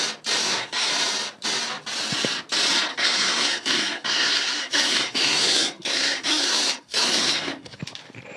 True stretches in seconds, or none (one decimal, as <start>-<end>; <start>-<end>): 0.0-0.4; 0.9-2.9; 7.8-8.4